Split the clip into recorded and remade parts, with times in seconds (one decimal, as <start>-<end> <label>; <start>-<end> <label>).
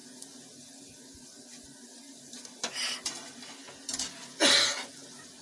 0.0-5.4 recorded